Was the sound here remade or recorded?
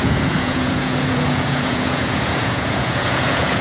remade